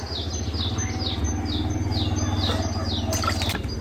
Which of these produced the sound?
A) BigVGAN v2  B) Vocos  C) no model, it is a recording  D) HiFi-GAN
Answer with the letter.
C